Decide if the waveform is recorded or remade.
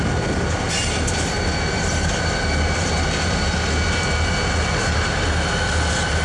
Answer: recorded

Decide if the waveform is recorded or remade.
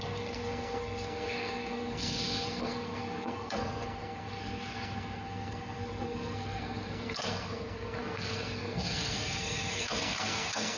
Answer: remade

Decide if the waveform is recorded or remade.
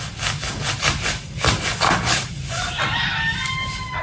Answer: recorded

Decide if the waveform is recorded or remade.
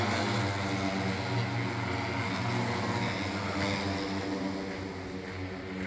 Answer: recorded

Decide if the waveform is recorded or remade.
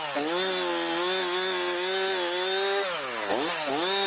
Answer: recorded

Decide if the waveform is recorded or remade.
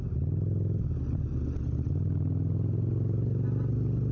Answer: recorded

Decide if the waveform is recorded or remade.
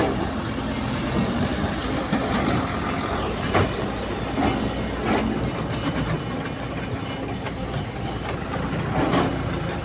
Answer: recorded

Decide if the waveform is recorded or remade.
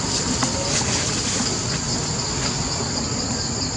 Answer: recorded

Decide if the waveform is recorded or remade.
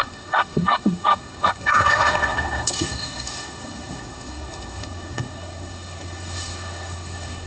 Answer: remade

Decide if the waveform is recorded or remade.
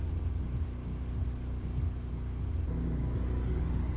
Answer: recorded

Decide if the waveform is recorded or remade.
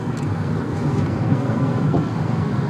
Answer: remade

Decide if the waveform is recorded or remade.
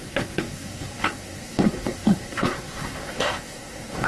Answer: remade